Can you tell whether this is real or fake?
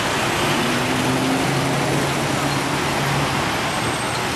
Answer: real